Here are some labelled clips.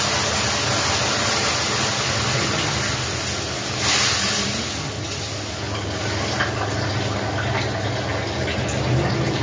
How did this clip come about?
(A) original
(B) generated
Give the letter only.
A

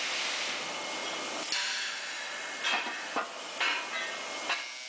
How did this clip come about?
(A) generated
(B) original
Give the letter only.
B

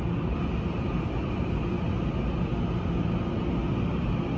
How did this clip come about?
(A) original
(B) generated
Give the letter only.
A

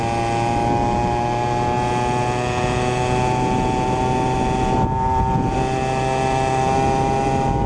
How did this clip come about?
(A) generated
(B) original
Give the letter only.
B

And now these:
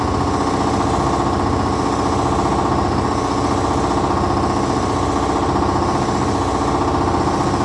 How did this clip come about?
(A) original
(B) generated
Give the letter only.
A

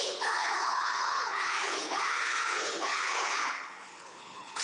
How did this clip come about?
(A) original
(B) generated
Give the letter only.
B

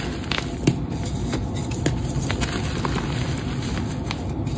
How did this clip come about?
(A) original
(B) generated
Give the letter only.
A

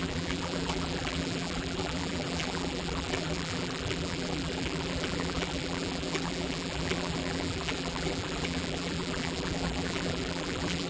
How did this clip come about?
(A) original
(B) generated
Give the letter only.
B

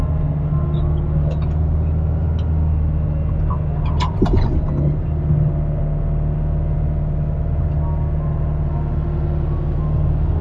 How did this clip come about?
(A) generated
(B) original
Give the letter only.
B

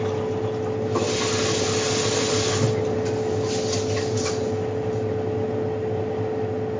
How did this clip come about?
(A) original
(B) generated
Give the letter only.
A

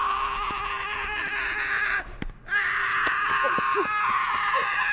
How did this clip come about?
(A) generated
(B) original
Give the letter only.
B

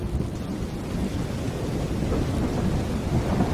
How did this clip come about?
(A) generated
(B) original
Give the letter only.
B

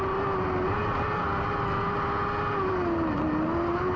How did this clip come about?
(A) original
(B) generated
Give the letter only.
A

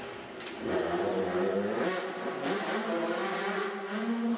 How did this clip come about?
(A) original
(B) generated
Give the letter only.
A